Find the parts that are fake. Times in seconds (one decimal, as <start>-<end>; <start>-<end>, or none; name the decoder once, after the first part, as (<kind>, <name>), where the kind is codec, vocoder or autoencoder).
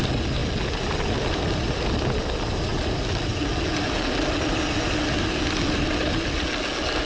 none